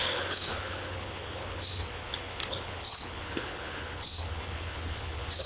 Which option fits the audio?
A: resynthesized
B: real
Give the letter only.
A